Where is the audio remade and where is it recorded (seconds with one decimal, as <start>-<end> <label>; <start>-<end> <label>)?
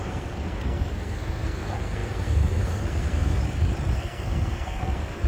0.0-3.4 remade; 3.4-3.9 recorded; 3.9-5.3 remade